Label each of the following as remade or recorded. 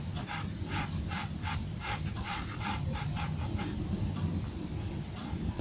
remade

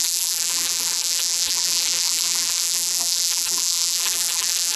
remade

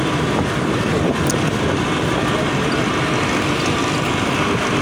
recorded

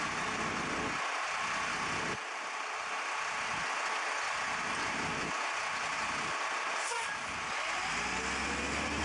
recorded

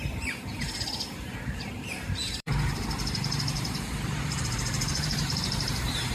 remade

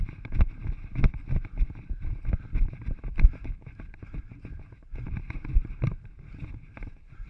remade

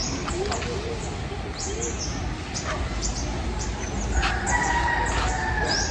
recorded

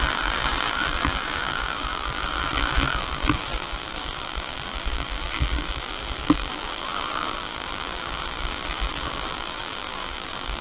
remade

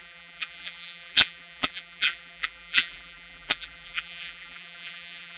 remade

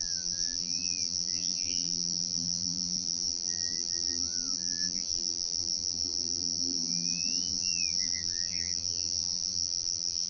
remade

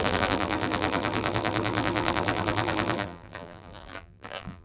remade